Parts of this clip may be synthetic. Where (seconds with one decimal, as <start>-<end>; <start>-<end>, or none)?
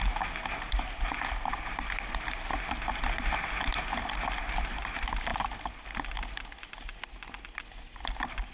none